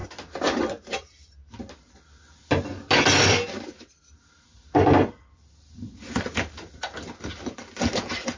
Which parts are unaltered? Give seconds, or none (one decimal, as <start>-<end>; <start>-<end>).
0.0-8.4